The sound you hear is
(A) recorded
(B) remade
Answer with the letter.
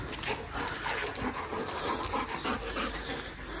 A